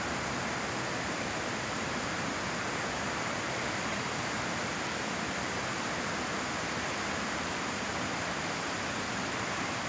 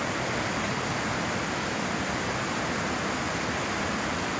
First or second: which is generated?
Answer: first